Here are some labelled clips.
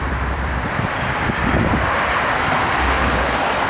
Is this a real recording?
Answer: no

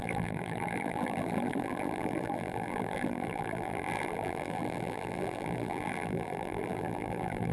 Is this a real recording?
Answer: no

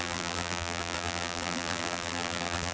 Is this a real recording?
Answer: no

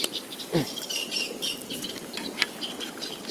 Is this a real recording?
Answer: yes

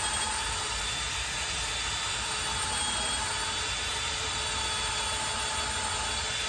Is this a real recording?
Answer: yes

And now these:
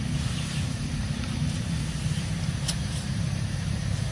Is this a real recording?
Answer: no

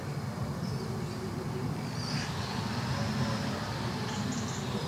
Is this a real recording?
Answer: no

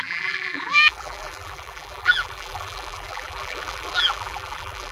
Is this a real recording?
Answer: no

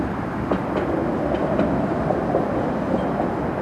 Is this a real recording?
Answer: yes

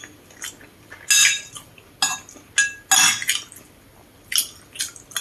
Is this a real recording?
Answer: yes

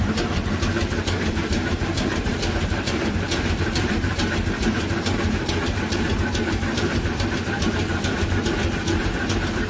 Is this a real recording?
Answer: no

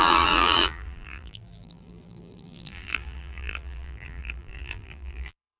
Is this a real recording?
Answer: no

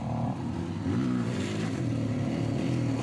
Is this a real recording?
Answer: yes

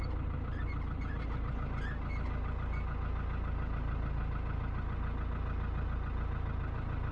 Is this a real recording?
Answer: yes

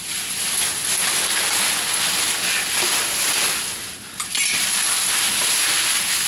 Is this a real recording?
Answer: yes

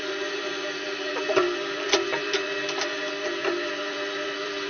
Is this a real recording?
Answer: no